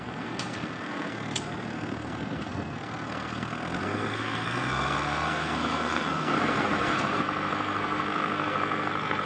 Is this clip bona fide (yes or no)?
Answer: no